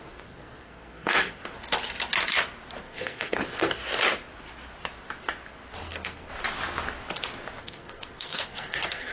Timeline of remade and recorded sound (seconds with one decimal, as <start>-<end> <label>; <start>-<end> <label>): 0.0-1.4 remade; 1.4-2.8 recorded; 2.8-3.8 remade; 3.8-5.8 recorded; 5.8-6.3 remade; 6.3-7.6 recorded; 7.6-9.1 remade